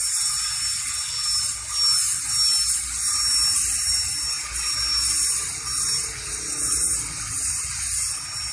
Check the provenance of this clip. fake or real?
real